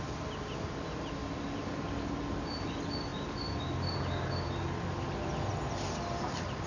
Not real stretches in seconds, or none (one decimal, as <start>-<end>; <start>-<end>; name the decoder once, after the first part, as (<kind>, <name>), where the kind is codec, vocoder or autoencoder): 0.0-1.2 (vocoder, BigVGAN v2); 2.4-3.1; 4.9-6.7